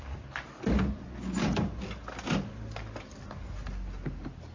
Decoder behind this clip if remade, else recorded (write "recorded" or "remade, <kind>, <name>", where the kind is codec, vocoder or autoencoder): recorded